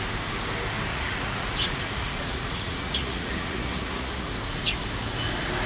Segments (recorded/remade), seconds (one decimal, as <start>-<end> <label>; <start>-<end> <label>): 0.0-0.9 recorded; 0.9-4.3 remade; 4.3-5.7 recorded